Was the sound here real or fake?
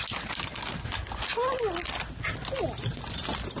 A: real